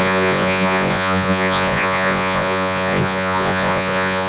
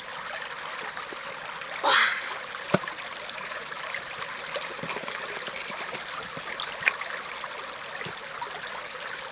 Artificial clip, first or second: first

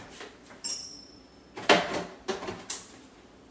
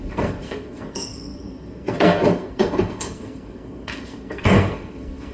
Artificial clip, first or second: second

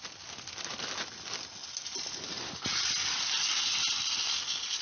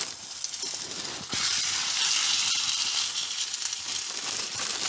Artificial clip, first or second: second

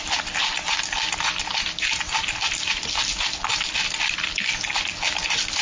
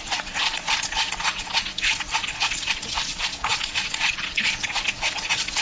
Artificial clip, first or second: second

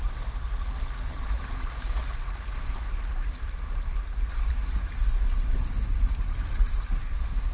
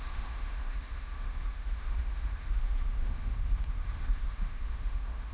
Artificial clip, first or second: second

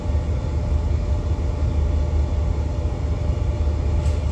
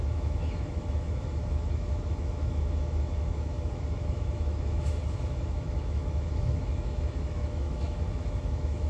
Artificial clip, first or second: second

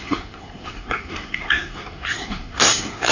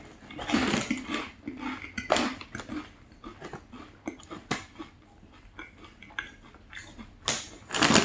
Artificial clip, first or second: first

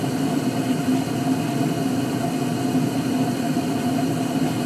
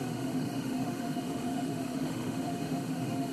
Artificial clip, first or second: second